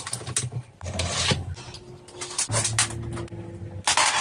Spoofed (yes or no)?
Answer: no